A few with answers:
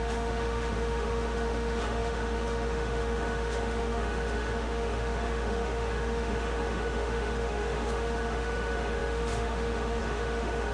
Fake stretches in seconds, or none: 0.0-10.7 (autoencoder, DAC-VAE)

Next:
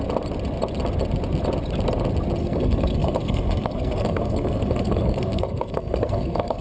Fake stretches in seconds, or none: 2.4-6.6 (codec, SNAC)

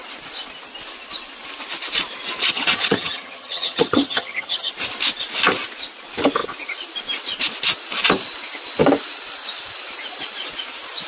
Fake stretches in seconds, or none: 2.4-4.7 (vocoder, HiFi-GAN)